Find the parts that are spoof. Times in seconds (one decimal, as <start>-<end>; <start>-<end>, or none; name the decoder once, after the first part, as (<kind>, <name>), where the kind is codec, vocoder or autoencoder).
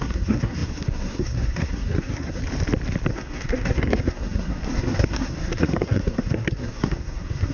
0.0-2.4 (codec, SNAC); 3.1-7.5